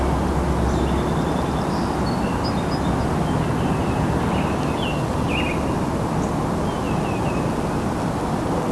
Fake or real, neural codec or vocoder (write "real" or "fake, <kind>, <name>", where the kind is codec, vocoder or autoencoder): real